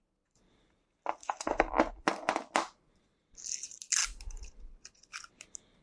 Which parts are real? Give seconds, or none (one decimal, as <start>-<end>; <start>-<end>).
0.0-1.2; 1.7-5.8